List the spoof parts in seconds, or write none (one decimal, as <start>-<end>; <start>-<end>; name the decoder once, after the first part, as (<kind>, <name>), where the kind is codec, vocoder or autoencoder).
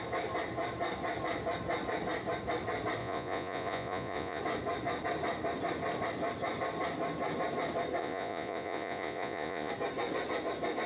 3.0-4.4 (vocoder, Vocos); 8.0-9.7